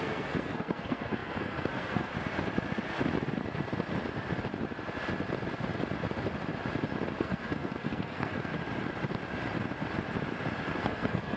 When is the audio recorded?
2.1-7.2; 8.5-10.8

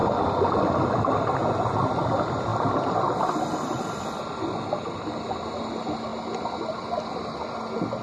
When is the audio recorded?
0.0-8.0

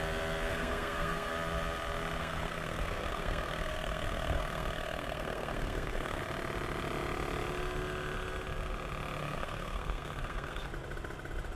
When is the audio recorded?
0.0-0.5; 1.3-2.2; 6.2-9.2; 10.7-11.6

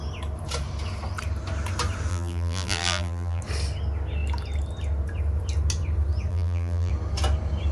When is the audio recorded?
0.0-2.1; 3.4-6.3; 6.9-7.7